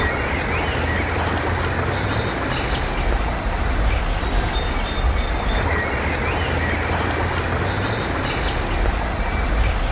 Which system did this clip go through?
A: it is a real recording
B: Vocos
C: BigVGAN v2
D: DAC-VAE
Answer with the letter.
A